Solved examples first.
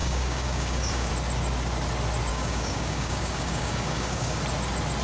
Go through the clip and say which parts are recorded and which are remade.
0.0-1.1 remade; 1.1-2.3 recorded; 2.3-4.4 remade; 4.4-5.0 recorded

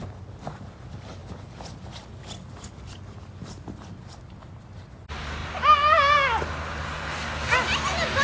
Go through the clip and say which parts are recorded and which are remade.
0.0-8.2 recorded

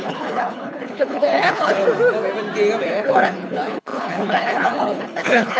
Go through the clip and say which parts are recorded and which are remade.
0.0-1.8 remade; 1.8-2.8 recorded; 2.8-5.6 remade